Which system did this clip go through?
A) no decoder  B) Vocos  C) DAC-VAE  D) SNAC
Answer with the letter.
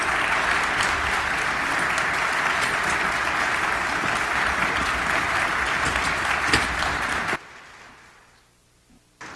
A